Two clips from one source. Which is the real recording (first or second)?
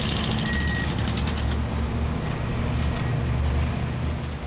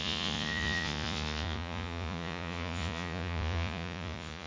first